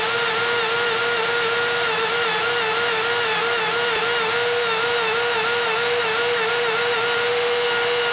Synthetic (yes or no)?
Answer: no